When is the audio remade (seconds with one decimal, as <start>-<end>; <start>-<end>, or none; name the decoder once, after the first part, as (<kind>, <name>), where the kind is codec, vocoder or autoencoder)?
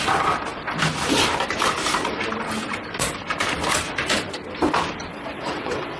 5.1-6.0 (vocoder, WaveNeXt)